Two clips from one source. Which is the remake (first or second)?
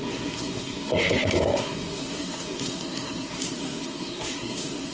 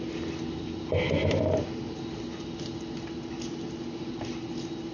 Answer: first